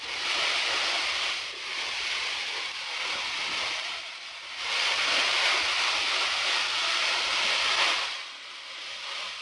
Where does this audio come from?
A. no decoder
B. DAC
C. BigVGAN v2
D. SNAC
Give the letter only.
C